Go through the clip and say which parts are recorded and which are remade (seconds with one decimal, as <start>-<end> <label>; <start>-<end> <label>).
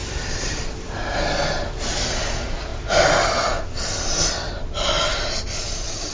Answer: 0.0-1.3 remade; 1.3-2.7 recorded; 2.7-3.6 remade; 3.6-6.1 recorded